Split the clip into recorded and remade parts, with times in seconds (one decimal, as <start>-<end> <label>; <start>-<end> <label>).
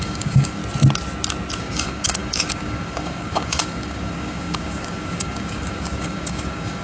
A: 0.0-0.6 remade; 0.6-1.6 recorded; 1.6-6.8 remade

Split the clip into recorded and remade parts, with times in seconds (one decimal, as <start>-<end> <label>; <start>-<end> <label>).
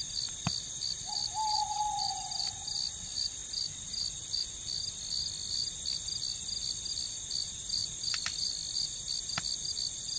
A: 0.0-10.2 recorded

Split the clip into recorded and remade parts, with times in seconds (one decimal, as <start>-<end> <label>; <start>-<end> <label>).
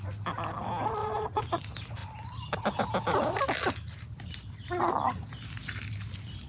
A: 0.0-1.0 recorded; 1.0-1.6 remade; 1.6-6.5 recorded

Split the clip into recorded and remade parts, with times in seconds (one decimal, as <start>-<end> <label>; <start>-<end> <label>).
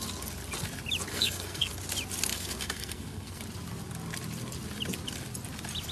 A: 0.0-1.1 recorded; 1.1-1.7 remade; 1.7-2.3 recorded; 2.3-3.4 remade; 3.4-5.9 recorded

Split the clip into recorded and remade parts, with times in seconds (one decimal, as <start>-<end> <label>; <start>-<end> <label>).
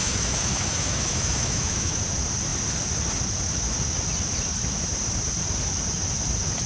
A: 0.0-2.0 remade; 2.0-6.7 recorded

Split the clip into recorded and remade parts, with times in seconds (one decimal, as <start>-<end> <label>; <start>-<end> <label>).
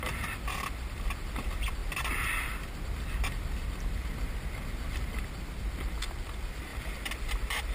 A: 0.0-7.7 recorded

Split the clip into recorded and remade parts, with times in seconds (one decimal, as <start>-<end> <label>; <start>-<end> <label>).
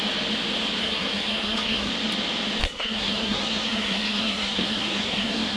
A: 0.0-0.8 recorded; 0.8-1.9 remade; 1.9-2.6 recorded; 2.6-5.6 remade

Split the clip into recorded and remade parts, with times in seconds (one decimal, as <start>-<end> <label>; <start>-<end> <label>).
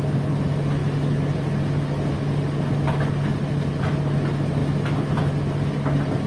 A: 0.0-6.3 recorded